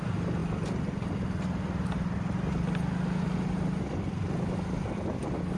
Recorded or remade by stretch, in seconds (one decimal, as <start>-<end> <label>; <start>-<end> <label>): 0.0-5.6 recorded